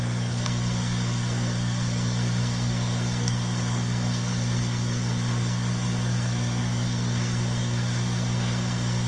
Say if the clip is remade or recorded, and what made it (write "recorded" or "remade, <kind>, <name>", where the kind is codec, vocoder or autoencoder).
remade, codec, SNAC